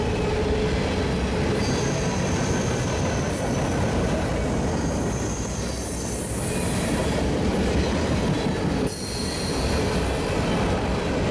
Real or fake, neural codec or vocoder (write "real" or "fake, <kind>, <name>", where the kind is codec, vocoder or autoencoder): real